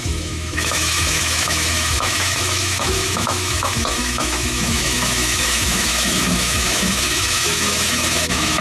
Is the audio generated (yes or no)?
yes